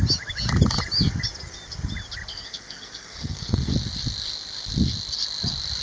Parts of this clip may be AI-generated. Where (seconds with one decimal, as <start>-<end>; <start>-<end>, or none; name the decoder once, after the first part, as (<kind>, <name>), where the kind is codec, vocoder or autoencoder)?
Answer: 2.3-3.7 (codec, SNAC)